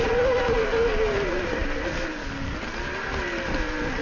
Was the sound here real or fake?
real